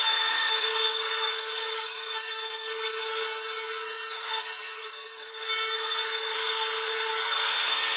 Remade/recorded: remade